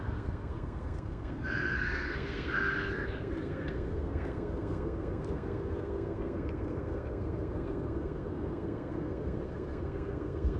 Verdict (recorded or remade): remade